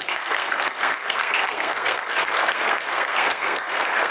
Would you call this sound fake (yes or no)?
yes